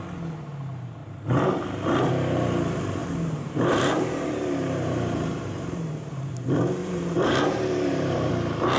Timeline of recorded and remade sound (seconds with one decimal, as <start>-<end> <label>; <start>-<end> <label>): 0.0-1.0 recorded; 1.0-2.1 remade; 2.1-3.0 recorded; 3.0-6.3 remade; 6.3-6.8 recorded; 6.8-8.3 remade; 8.3-8.8 recorded